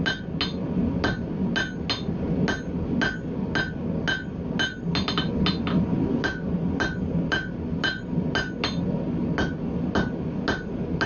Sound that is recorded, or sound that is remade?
recorded